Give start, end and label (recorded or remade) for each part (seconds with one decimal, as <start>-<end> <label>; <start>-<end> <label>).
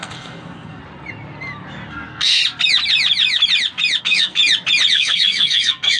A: 0.0-0.8 remade; 0.8-1.9 recorded; 1.9-2.4 remade; 2.4-4.0 recorded; 4.0-4.4 remade; 4.4-4.9 recorded; 4.9-6.0 remade